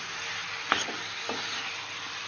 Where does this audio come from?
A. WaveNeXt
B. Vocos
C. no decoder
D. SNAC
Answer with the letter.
C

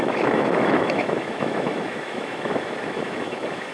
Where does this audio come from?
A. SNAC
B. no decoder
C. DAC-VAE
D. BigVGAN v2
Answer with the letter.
C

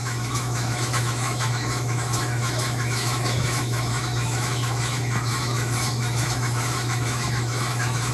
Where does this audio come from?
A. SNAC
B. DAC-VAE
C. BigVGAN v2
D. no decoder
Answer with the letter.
B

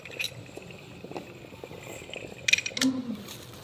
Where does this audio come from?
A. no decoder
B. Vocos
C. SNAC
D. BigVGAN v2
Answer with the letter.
A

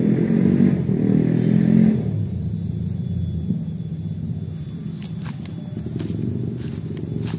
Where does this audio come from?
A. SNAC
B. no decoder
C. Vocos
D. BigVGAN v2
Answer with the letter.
B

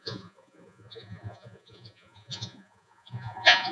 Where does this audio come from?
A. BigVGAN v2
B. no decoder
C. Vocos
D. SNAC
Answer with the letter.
C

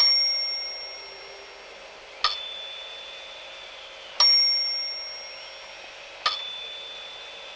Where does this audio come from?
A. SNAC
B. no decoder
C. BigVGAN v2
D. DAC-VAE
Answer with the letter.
B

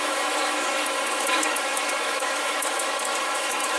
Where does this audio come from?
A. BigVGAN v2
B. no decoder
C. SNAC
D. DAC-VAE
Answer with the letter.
D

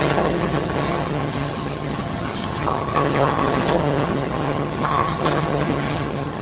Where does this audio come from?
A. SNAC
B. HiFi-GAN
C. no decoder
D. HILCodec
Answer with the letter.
B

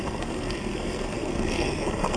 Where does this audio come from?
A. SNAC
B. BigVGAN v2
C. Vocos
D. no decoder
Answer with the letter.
A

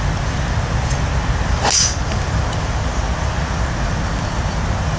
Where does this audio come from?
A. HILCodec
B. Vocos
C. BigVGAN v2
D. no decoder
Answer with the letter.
D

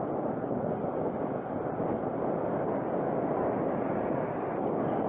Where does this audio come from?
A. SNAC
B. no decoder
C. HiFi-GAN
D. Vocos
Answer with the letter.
B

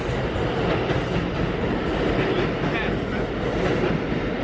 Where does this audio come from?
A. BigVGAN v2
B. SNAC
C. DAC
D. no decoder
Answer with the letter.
D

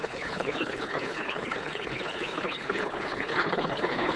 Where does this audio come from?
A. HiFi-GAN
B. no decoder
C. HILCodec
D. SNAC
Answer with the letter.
C